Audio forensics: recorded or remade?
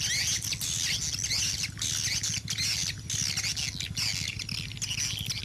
recorded